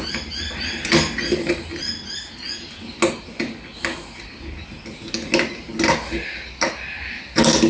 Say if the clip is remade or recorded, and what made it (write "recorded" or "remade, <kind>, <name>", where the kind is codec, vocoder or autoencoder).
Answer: recorded